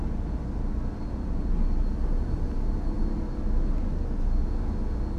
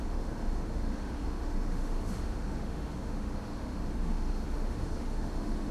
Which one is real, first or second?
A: first